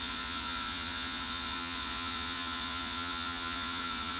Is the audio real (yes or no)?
no